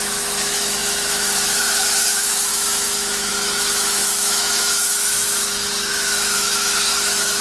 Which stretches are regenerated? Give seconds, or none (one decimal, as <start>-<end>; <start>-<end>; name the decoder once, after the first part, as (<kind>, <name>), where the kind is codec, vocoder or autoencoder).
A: 0.0-7.4 (autoencoder, DAC-VAE)